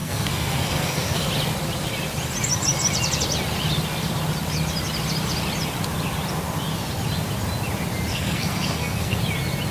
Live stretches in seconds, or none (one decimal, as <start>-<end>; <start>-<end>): 1.3-8.1; 9.2-9.7